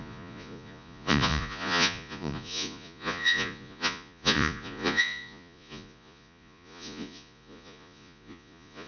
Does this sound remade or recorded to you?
remade